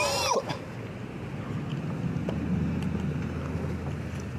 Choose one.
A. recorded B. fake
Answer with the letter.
A